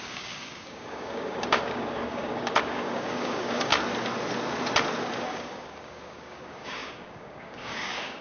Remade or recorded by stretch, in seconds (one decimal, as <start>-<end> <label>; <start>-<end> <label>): 0.0-3.7 remade; 3.7-5.2 recorded; 5.2-8.2 remade